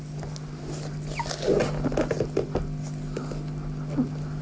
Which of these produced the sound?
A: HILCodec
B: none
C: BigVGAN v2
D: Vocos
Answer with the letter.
B